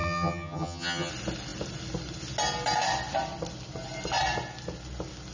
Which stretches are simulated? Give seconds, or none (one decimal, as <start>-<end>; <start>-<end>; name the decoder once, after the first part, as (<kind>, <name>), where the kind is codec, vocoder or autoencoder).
0.0-1.1 (vocoder, HiFi-GAN)